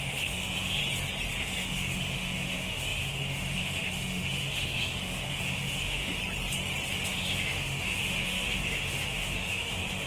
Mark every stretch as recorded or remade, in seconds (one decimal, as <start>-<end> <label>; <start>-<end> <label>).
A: 0.0-0.8 remade; 0.8-1.4 recorded; 1.4-6.2 remade; 6.2-6.9 recorded; 6.9-10.1 remade